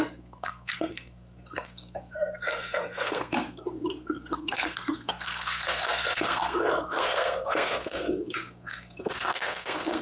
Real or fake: fake